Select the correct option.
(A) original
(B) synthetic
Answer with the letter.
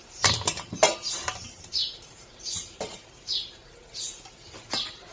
B